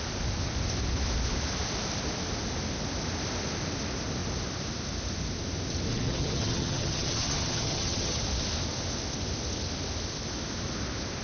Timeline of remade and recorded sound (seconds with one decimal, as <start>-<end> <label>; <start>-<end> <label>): 0.0-5.9 recorded; 5.9-8.2 remade; 8.2-11.2 recorded